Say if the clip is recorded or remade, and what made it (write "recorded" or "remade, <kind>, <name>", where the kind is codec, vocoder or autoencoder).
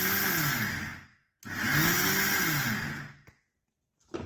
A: recorded